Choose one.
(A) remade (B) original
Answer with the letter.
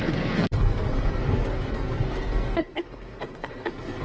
A